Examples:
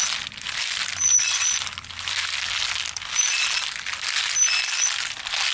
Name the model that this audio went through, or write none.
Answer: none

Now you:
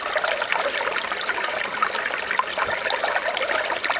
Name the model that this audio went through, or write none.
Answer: none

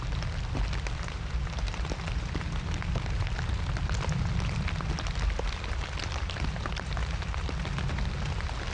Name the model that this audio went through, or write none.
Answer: none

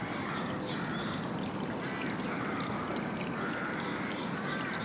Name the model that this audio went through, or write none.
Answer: none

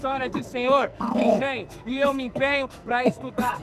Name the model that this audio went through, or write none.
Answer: codec, SNAC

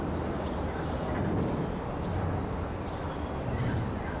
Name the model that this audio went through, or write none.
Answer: none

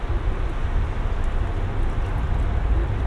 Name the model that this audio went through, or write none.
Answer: none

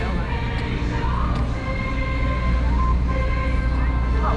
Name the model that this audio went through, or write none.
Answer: none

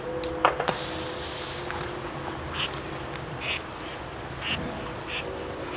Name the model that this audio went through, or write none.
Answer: none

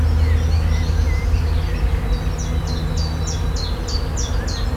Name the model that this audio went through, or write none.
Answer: none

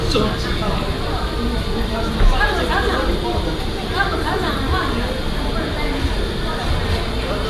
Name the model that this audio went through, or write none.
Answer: none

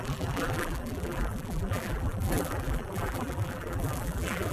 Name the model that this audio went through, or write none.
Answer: vocoder, BigVGAN v2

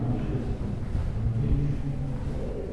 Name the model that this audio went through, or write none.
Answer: none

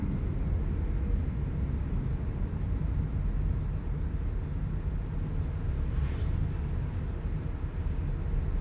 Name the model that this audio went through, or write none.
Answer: none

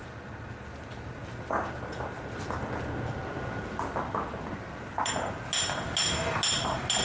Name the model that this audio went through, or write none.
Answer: none